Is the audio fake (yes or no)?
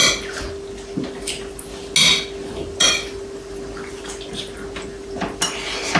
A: no